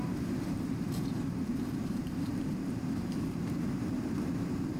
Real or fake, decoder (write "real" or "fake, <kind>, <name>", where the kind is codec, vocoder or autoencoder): fake, vocoder, BigVGAN v2